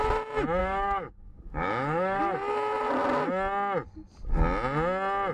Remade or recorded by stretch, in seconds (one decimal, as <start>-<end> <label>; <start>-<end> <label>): 0.0-0.6 recorded; 0.6-2.2 remade; 2.2-5.3 recorded